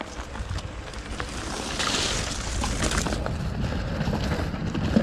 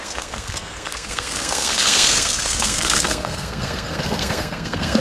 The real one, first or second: first